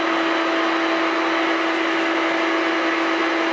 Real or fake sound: real